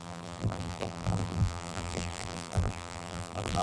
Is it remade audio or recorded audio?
remade